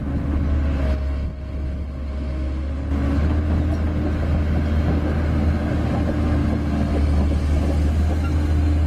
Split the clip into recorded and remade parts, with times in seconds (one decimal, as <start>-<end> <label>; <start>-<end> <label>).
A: 0.0-8.9 recorded